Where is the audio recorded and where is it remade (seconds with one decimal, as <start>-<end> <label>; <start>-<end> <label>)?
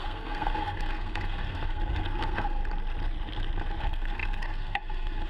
0.0-2.6 remade; 2.6-3.8 recorded; 3.8-5.3 remade